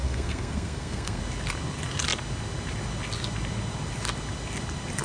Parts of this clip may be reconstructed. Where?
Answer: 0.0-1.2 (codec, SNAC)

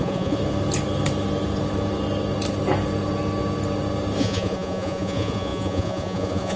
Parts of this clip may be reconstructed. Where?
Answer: 0.0-0.4 (vocoder, Vocos); 4.2-6.6

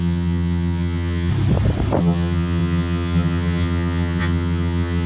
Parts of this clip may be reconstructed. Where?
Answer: 0.0-1.3 (vocoder, HiFi-GAN); 2.0-5.1

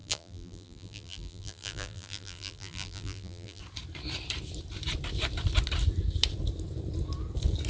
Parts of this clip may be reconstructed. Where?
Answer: 0.0-3.6 (vocoder, BigVGAN v2)